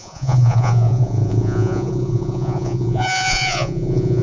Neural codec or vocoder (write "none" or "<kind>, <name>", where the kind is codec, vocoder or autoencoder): vocoder, Vocos